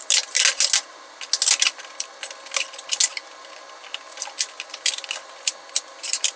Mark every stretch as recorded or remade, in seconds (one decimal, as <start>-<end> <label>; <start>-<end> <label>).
0.0-6.4 recorded